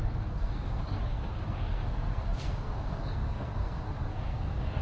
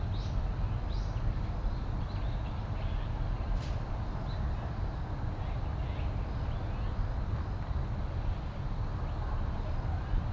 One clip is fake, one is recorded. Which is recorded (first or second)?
second